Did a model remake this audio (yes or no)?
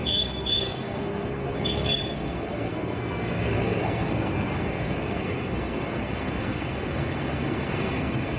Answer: yes